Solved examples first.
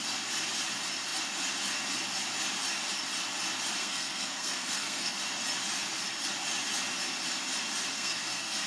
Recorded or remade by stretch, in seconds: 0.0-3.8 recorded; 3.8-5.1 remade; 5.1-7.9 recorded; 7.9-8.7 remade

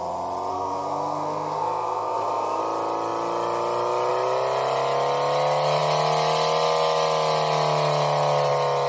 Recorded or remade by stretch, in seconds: 0.0-0.5 recorded; 0.5-2.6 remade; 2.6-8.9 recorded

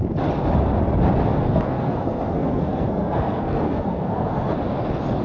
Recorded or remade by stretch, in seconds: 0.0-1.4 recorded; 1.4-4.5 remade; 4.5-5.2 recorded

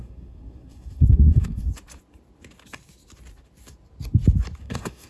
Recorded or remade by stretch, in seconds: 0.0-1.7 remade; 1.7-4.6 recorded; 4.6-5.1 remade